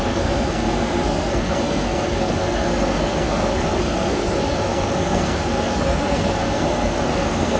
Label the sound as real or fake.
fake